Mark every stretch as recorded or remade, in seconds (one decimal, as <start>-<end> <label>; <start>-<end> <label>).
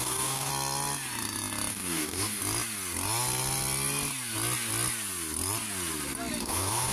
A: 0.0-0.5 remade; 0.5-1.7 recorded; 1.7-2.4 remade; 2.4-6.4 recorded; 6.4-6.9 remade